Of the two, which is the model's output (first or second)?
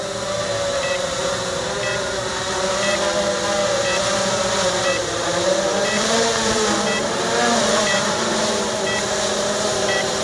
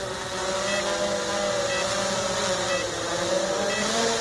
first